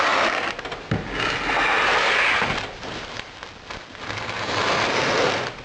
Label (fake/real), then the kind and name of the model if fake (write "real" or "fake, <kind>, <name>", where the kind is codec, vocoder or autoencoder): real